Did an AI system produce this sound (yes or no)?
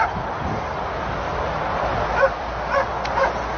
no